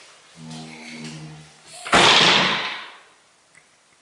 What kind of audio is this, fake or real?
real